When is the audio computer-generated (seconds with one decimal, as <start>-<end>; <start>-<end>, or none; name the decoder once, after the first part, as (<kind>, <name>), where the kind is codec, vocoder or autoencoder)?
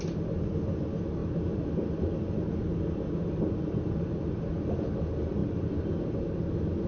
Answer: none